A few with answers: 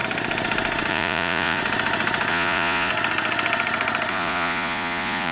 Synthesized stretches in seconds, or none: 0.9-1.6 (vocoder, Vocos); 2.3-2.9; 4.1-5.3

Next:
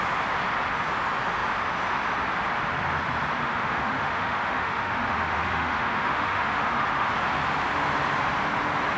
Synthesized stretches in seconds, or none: 3.4-7.1 (autoencoder, DAC-VAE)

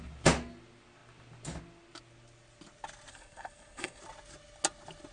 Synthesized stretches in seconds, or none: 3.1-4.0 (codec, SNAC)

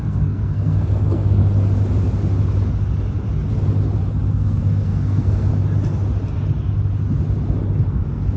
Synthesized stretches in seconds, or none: 0.0-1.4 (codec, SNAC); 4.3-5.5; 7.9-8.4

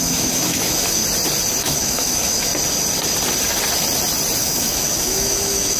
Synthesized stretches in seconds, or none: 0.0-1.0 (autoencoder, DAC-VAE); 1.6-2.5; 4.4-5.8

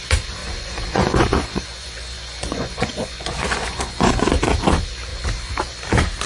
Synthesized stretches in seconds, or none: 0.4-4.2 (vocoder, Vocos)

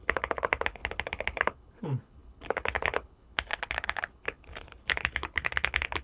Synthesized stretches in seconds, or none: 0.0-6.0 (codec, HILCodec)